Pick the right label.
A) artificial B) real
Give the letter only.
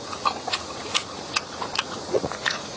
A